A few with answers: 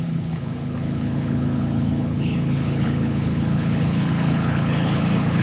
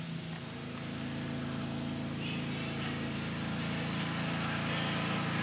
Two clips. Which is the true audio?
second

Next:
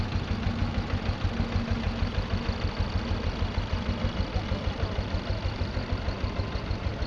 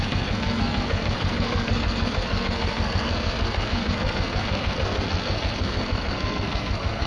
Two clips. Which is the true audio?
first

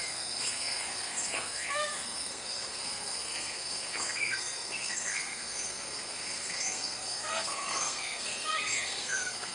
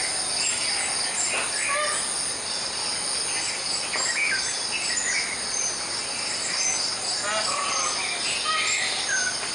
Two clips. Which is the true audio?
second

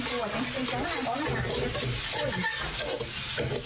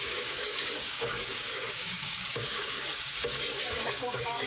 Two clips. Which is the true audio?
first